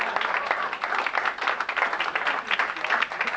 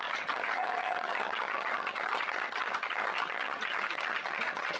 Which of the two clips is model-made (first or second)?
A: second